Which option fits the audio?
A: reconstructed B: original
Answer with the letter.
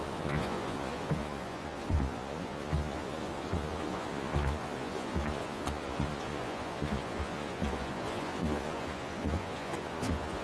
A